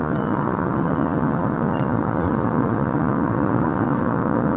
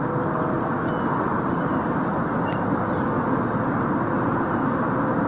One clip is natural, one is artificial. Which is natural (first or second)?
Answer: second